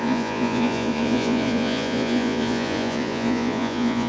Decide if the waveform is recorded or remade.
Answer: remade